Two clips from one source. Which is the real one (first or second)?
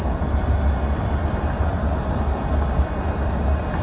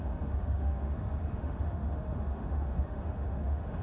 first